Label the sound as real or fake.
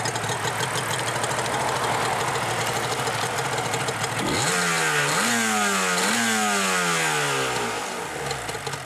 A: real